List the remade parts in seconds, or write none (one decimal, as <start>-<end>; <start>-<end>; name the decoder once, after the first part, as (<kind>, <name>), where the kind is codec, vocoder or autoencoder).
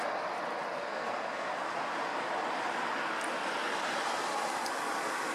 0.9-1.5 (codec, SNAC)